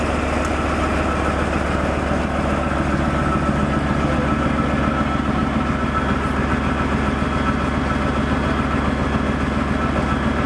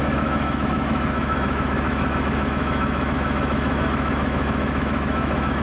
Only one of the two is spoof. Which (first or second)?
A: second